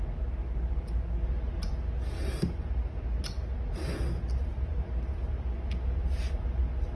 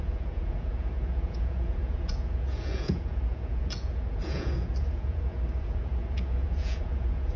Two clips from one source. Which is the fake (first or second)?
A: second